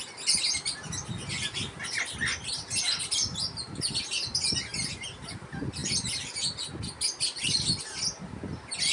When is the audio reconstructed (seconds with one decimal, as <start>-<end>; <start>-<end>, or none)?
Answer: none